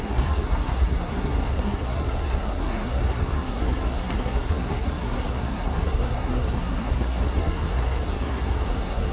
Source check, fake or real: fake